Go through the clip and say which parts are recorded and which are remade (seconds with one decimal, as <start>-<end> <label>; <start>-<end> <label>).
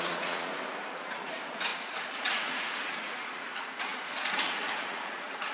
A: 0.0-0.5 remade; 0.5-1.0 recorded; 1.0-5.5 remade